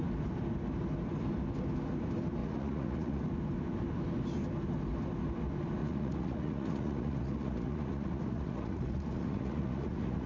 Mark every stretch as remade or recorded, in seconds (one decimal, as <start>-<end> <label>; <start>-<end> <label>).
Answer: 0.0-2.4 recorded; 2.4-3.2 remade; 3.2-5.8 recorded; 5.8-10.3 remade